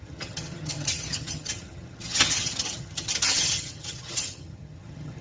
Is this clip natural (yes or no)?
no